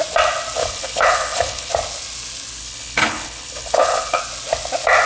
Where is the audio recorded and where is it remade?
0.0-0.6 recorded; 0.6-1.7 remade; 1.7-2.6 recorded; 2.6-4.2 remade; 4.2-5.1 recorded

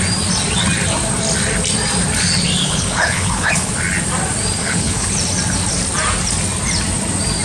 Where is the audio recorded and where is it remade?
0.0-2.6 recorded; 2.6-3.7 remade; 3.7-4.6 recorded; 4.6-5.1 remade; 5.1-7.4 recorded

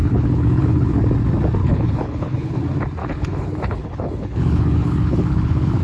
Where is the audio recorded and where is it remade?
0.0-1.0 remade; 1.0-1.6 recorded; 1.6-2.6 remade; 2.6-3.0 recorded; 3.0-5.8 remade